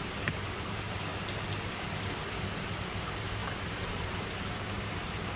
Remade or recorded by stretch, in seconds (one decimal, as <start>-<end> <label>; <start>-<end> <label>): 0.0-1.1 remade; 1.1-2.5 recorded; 2.5-5.4 remade